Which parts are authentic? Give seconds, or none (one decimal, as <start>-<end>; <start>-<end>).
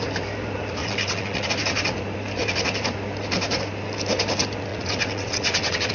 0.0-0.8; 1.5-4.7